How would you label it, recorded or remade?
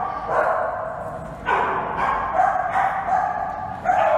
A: recorded